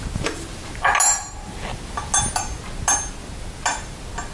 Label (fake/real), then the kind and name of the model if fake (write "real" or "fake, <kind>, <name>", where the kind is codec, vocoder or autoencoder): real